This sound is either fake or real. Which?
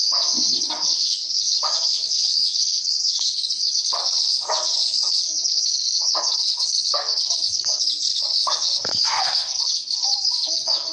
fake